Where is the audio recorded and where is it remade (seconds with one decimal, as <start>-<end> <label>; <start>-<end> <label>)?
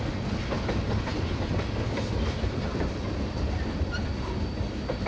0.0-5.1 recorded